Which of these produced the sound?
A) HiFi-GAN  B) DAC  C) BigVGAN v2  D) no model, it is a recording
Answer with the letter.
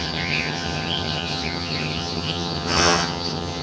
A